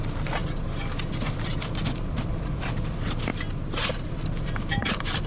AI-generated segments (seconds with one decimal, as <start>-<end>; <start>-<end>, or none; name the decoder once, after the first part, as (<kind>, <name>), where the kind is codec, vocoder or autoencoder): 0.0-0.4 (vocoder, BigVGAN v2); 1.1-3.3; 4.1-5.3